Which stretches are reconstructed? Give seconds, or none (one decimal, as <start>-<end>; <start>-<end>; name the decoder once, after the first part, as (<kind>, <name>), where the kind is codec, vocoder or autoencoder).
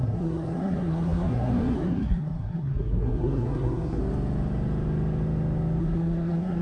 0.0-4.0 (codec, SNAC); 5.8-6.6